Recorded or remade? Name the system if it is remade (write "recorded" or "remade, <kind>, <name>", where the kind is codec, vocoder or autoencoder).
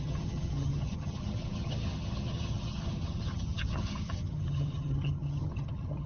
remade, vocoder, HiFi-GAN